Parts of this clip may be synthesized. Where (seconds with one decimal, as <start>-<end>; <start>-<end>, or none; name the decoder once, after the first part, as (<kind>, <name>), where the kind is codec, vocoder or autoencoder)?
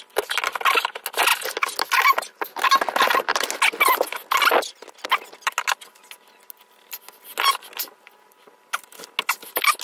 none